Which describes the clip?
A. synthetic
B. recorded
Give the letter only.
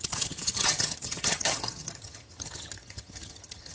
A